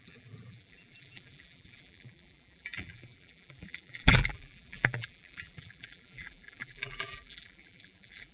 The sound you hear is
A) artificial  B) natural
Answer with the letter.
A